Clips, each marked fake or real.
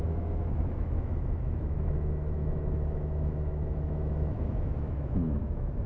fake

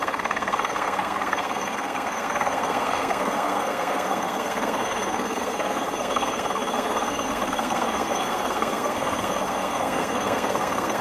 fake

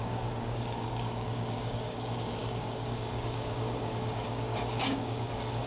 fake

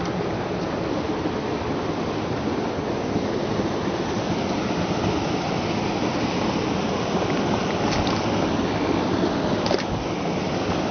real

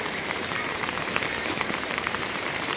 fake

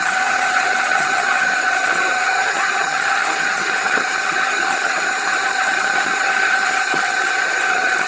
fake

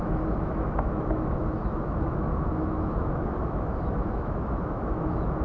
fake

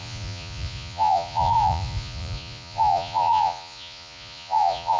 fake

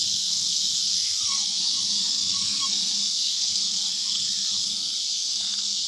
fake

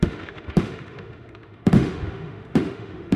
fake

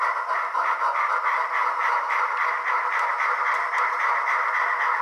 real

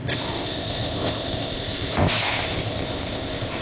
fake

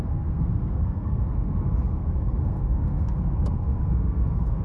fake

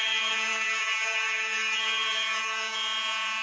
fake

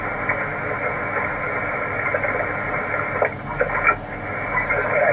real